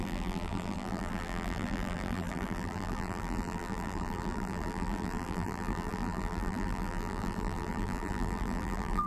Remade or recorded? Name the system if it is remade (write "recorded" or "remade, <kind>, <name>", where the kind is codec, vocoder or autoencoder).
remade, vocoder, BigVGAN v2